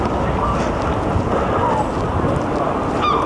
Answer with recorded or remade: recorded